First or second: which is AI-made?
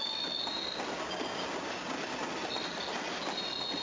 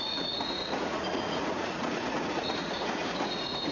second